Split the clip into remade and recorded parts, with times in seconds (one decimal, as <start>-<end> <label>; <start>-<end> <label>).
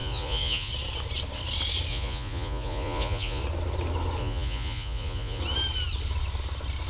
0.0-0.7 remade; 0.7-1.9 recorded; 1.9-3.4 remade; 3.4-4.2 recorded; 4.2-5.4 remade; 5.4-6.9 recorded